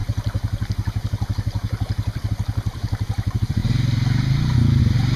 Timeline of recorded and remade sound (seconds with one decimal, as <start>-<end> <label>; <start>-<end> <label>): 0.0-3.6 remade; 3.6-4.8 recorded; 4.8-5.2 remade